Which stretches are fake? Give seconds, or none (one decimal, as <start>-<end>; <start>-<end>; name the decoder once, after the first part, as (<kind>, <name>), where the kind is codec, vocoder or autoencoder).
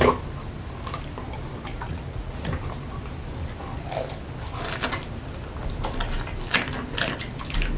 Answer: 1.7-2.5 (vocoder, Vocos)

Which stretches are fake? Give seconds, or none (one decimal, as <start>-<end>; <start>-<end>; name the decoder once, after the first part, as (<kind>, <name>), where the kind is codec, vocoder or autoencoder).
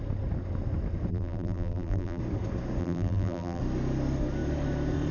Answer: 1.1-2.2 (vocoder, BigVGAN v2); 2.8-3.6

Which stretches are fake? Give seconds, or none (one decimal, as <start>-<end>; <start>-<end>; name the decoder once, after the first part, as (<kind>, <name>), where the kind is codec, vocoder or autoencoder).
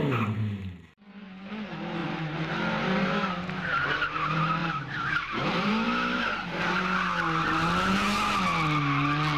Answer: 2.0-3.3 (vocoder, BigVGAN v2); 4.6-5.7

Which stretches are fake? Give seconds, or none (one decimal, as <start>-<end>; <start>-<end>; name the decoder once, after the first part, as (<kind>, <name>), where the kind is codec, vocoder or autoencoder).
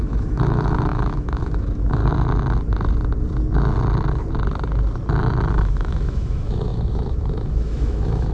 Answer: 0.0-2.0 (autoencoder, DAC-VAE); 5.5-8.3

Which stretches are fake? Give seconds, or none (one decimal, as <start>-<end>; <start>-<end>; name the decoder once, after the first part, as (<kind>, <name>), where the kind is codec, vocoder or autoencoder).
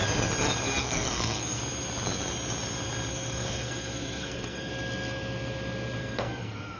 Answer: 0.8-1.6 (codec, SNAC); 3.1-4.7; 6.0-6.8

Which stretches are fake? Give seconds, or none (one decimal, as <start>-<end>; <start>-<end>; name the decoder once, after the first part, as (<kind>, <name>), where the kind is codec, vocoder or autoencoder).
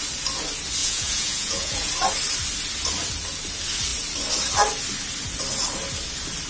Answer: 0.8-1.9 (vocoder, Vocos)